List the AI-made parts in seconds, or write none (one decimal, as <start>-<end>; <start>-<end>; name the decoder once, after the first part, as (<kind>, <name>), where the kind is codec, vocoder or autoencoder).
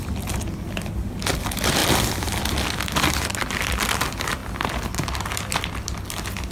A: 4.4-5.5 (vocoder, BigVGAN v2)